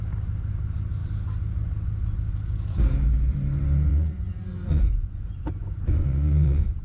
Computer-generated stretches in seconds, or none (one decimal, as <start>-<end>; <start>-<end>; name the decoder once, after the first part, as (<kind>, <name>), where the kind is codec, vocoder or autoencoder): 3.9-6.8 (vocoder, Vocos)